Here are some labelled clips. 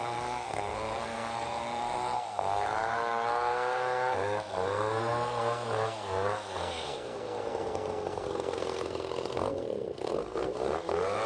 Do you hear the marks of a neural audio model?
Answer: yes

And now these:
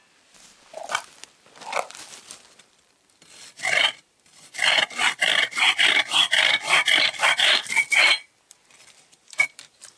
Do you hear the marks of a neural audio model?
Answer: yes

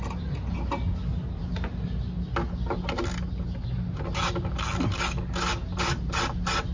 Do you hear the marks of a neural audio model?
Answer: no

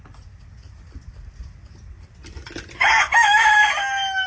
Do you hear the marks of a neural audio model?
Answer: no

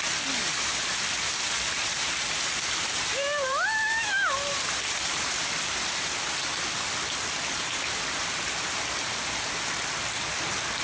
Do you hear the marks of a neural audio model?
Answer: yes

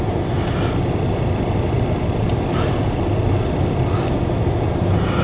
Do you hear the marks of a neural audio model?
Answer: no